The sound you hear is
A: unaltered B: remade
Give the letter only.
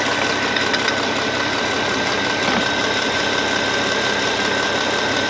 A